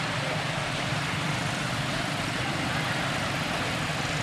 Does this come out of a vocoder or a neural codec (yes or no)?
yes